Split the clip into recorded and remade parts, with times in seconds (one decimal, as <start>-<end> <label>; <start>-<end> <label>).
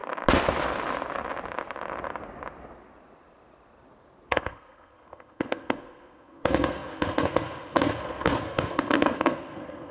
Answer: 0.0-4.3 recorded; 4.3-9.9 remade